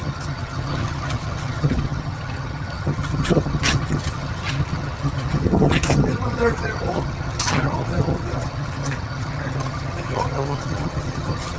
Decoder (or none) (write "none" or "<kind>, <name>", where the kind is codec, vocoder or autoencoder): vocoder, HiFi-GAN